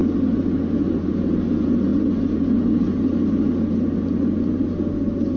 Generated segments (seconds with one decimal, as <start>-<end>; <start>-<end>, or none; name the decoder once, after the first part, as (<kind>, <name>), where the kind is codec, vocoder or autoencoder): none